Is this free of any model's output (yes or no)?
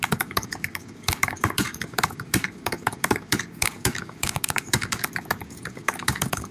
no